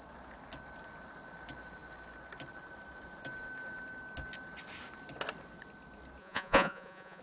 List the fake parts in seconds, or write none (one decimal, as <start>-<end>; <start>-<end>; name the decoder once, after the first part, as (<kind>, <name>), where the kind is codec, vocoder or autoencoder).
6.2-7.2 (vocoder, Vocos)